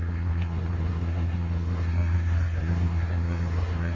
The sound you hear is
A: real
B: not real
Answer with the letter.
B